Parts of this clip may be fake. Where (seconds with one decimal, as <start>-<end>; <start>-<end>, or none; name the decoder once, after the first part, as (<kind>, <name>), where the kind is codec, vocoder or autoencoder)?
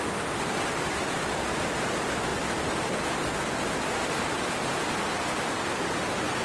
2.3-4.1 (vocoder, BigVGAN v2)